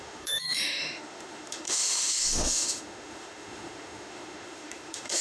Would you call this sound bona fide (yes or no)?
no